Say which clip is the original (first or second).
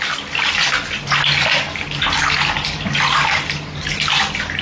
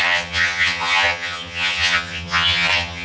first